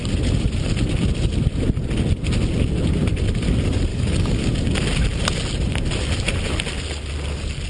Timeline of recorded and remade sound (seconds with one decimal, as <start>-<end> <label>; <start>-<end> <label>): 0.0-3.9 recorded; 3.9-4.4 remade; 4.4-7.7 recorded